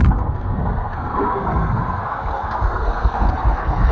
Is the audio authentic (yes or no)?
no